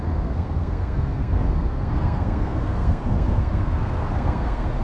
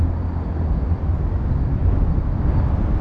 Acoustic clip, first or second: second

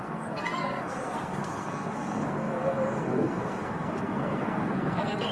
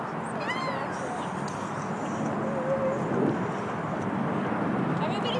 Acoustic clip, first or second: second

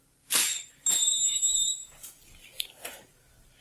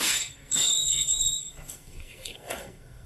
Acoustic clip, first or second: first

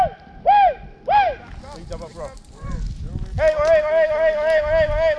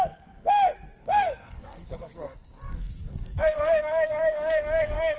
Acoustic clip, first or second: first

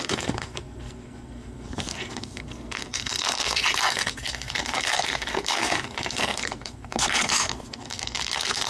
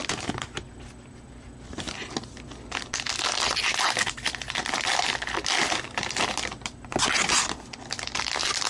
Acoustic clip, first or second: second